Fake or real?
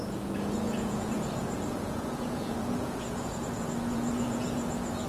fake